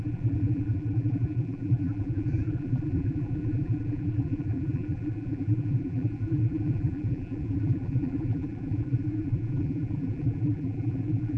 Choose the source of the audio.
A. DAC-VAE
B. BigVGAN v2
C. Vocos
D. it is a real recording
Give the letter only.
B